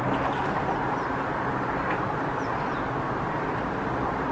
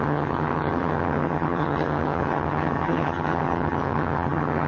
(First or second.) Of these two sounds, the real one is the first